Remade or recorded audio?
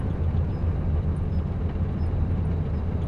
recorded